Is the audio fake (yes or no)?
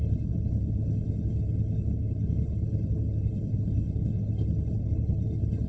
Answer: yes